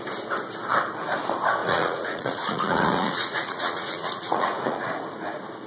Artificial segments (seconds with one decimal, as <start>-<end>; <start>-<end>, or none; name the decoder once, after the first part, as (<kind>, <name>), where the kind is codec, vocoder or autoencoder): 1.6-5.0 (vocoder, Vocos)